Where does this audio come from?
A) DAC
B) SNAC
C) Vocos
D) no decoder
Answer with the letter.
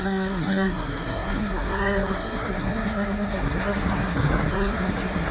B